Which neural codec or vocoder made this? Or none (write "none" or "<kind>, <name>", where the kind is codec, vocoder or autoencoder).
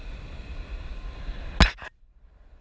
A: none